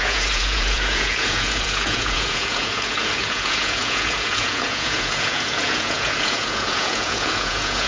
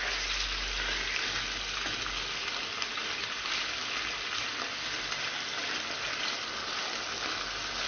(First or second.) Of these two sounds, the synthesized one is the first